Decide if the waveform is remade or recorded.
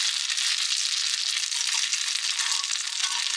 recorded